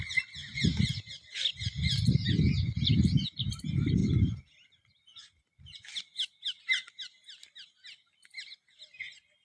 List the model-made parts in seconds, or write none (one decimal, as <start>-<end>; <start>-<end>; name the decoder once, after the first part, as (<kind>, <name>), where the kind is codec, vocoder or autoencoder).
none